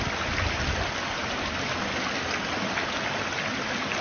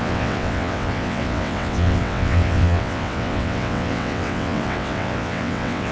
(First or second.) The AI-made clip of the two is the second